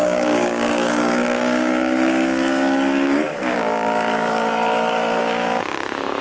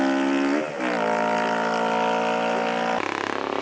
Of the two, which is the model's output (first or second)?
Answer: first